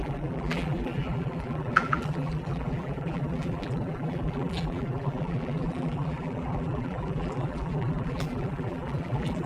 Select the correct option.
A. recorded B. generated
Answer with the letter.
B